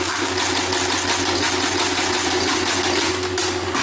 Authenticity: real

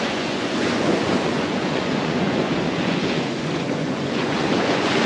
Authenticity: fake